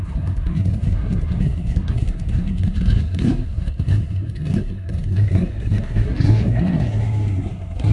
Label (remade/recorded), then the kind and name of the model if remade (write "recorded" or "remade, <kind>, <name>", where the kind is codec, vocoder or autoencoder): remade, codec, SNAC